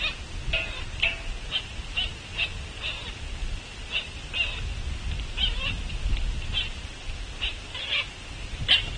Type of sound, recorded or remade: recorded